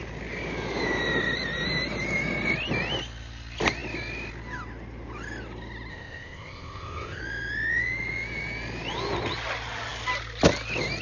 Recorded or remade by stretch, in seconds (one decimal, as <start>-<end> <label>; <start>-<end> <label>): 0.0-5.9 recorded; 5.9-7.2 remade; 7.2-11.0 recorded